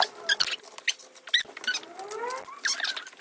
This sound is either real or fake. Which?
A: real